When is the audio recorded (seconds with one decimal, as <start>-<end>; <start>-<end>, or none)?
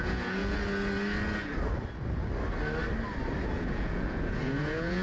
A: 0.4-3.4